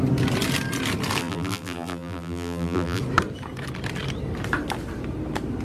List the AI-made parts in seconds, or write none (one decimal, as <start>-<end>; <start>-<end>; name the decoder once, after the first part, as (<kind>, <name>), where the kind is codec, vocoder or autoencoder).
1.2-3.0 (vocoder, BigVGAN v2)